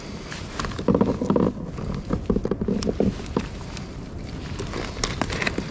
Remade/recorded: recorded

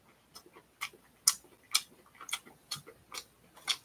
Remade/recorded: recorded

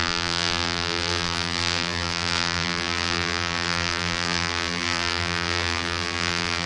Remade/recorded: remade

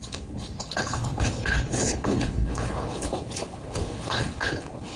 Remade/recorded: remade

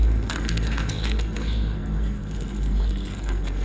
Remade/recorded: remade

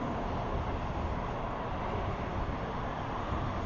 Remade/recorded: recorded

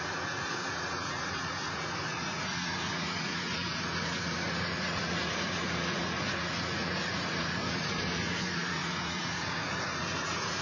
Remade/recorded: remade